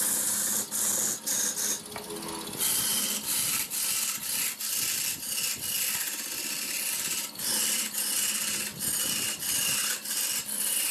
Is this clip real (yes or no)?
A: yes